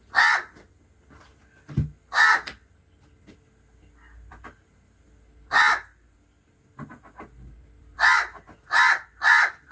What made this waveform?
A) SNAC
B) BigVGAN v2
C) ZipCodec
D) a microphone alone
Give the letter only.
D